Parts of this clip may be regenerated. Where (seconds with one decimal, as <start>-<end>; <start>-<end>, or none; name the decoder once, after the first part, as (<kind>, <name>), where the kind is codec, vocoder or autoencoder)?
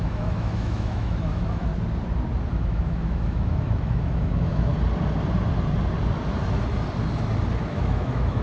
0.0-1.7 (autoencoder, DAC-VAE); 2.5-4.7; 7.6-8.4